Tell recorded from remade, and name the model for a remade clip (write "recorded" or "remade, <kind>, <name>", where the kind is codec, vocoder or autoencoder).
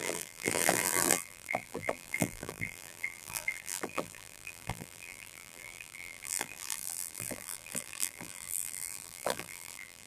remade, vocoder, BigVGAN v2